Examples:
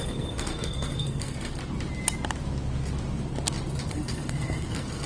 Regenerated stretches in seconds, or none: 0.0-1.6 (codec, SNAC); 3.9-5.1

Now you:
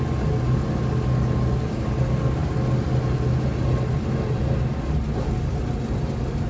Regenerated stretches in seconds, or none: none

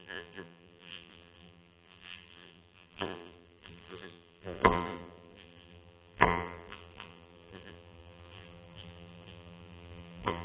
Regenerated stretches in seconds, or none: 0.0-10.4 (vocoder, BigVGAN v2)

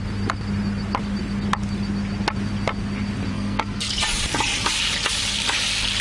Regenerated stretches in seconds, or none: 3.3-3.9 (codec, SNAC)

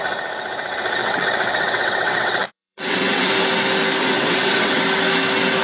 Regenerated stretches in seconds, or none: 1.0-3.3 (vocoder, WaveNeXt); 4.0-4.8